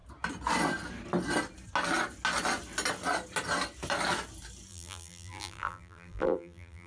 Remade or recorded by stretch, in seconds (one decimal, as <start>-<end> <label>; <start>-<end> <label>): 0.0-4.7 recorded; 4.7-6.9 remade